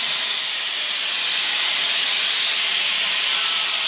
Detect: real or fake fake